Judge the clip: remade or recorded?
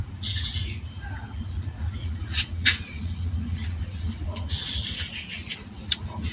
remade